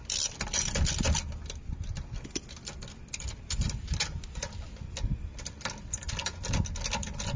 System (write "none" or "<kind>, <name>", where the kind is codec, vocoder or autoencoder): none